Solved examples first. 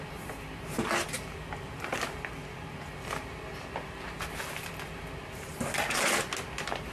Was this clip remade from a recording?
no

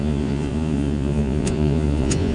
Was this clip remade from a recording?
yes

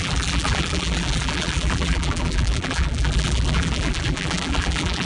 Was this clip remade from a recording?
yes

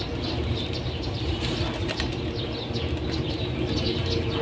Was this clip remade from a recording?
no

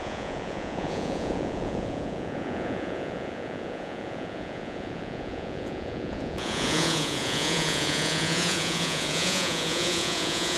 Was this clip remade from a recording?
yes